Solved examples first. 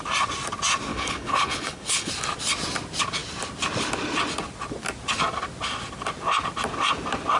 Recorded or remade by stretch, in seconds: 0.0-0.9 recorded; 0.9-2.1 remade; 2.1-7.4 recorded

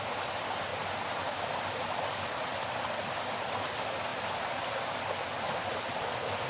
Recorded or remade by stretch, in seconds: 0.0-6.5 recorded

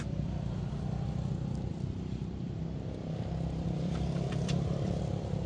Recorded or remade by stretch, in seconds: 0.0-1.7 recorded; 1.7-5.0 remade; 5.0-5.5 recorded

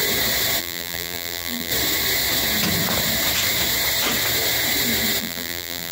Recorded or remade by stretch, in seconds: 0.0-0.6 recorded; 0.6-1.7 remade; 1.7-5.2 recorded; 5.2-5.9 remade

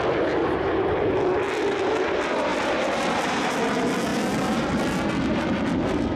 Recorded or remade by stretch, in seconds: 0.0-0.4 recorded; 0.4-1.1 remade; 1.1-2.5 recorded; 2.5-3.6 remade; 3.6-4.1 recorded; 4.1-5.0 remade; 5.0-6.2 recorded

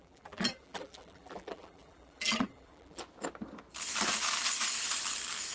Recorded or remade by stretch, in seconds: 0.0-3.0 remade; 3.0-5.5 recorded